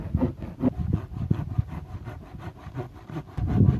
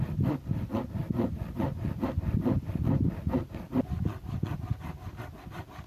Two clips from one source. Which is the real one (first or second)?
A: first